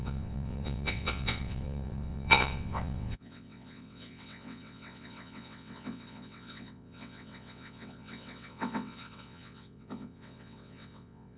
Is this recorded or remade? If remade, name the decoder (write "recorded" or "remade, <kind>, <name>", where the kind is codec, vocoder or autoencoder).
remade, vocoder, WaveNeXt